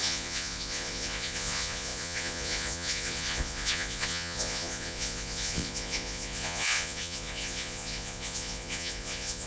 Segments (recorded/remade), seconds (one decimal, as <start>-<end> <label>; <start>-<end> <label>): 0.0-9.5 remade